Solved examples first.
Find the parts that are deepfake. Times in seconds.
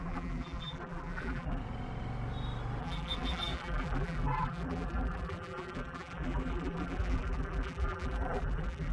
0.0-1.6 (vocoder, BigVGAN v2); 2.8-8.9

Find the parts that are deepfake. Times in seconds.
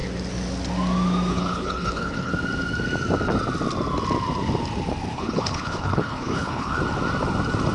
1.3-2.3 (codec, HILCodec); 5.1-6.8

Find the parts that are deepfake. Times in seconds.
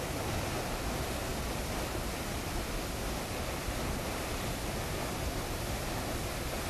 none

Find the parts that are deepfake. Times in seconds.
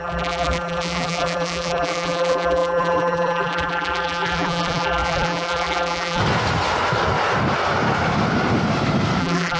0.0-6.2 (vocoder, BigVGAN v2); 9.2-9.6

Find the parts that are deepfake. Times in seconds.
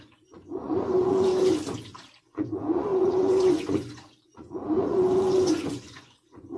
0.0-1.3 (vocoder, Vocos); 2.2-6.6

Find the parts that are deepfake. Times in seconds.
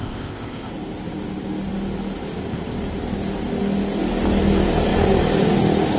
0.0-0.7 (codec, ZipCodec)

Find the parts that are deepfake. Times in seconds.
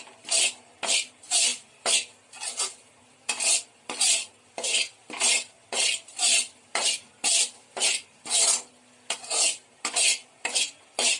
none